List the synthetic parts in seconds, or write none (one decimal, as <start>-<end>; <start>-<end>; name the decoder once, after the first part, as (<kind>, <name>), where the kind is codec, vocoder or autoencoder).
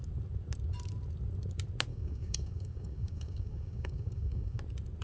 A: 1.9-4.6 (codec, DAC)